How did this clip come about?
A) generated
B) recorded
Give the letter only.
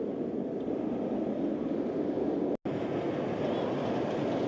B